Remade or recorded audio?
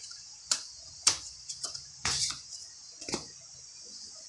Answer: remade